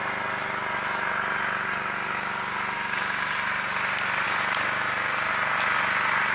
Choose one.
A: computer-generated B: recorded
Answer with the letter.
B